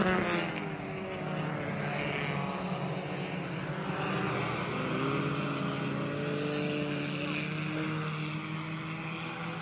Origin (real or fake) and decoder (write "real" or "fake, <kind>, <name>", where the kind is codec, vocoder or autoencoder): real